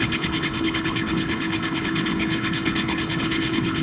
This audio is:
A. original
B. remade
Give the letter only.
B